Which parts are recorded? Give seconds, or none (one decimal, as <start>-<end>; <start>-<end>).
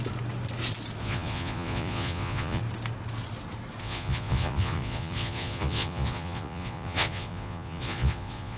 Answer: 0.0-1.0; 2.6-3.8